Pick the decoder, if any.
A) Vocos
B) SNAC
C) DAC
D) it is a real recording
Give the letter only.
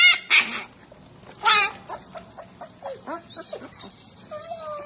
D